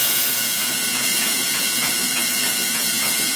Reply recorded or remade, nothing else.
remade